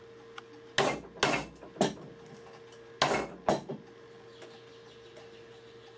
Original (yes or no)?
yes